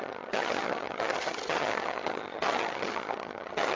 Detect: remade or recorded remade